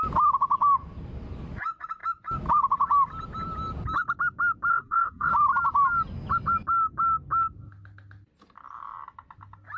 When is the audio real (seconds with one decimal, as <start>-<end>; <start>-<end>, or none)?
0.0-4.7; 5.3-9.8